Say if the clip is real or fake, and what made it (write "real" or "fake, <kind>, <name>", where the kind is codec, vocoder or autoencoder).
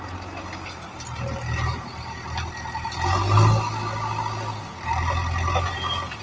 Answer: real